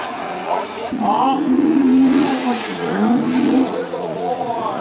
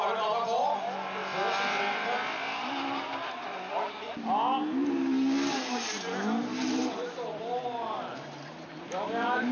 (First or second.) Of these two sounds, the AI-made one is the first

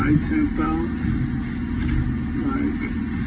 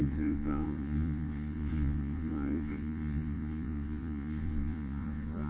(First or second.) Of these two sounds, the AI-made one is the second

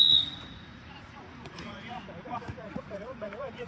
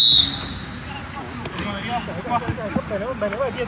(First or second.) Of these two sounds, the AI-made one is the first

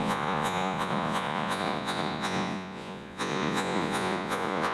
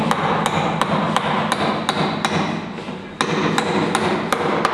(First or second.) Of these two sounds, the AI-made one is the first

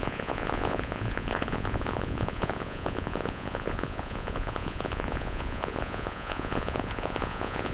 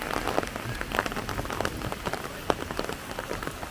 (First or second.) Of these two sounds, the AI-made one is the first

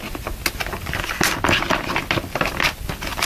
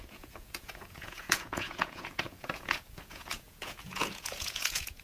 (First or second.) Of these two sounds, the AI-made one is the second